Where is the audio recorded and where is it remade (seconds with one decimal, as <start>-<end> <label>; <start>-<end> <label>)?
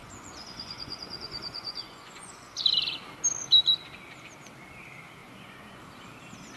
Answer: 0.0-2.5 remade; 2.5-5.2 recorded; 5.2-5.8 remade; 5.8-6.6 recorded